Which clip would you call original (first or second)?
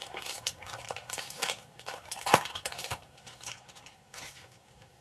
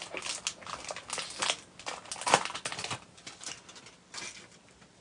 second